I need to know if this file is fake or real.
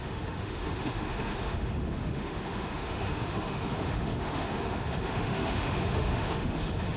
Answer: fake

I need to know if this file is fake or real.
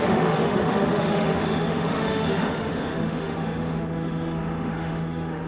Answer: fake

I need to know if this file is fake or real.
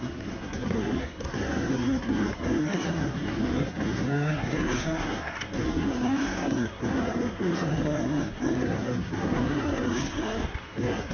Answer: fake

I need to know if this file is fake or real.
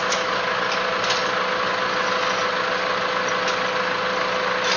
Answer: real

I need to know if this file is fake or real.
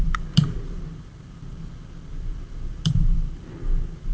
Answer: fake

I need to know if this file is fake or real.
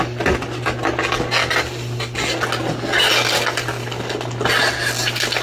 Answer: real